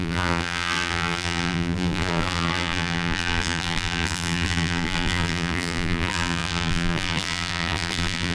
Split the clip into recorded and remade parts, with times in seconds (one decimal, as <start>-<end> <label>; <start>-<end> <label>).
0.0-8.3 remade